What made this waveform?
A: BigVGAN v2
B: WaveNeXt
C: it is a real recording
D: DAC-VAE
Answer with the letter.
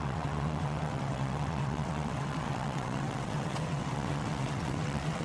B